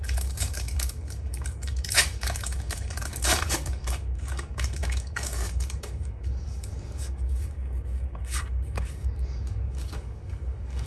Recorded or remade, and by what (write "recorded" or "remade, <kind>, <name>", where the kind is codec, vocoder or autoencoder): remade, codec, DAC